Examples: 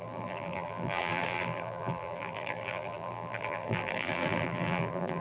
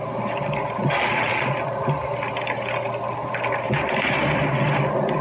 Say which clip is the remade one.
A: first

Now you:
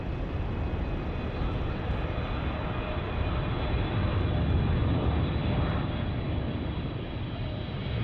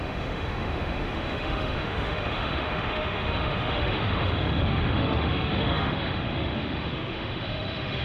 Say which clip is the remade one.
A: second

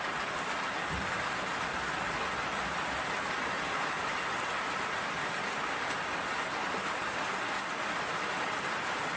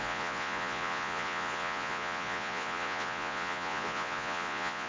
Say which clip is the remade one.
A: second